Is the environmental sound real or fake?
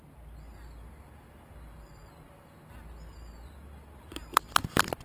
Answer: real